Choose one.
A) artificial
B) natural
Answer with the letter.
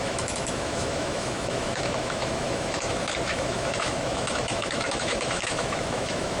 A